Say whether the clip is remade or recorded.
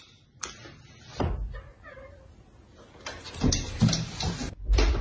recorded